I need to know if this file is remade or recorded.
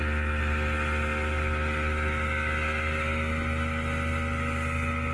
recorded